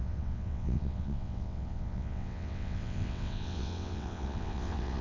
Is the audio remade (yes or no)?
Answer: yes